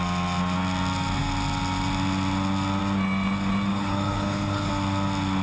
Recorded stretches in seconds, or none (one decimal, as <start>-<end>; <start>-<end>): 0.0-3.7; 4.7-5.4